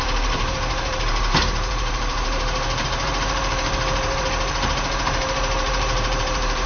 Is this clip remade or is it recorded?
remade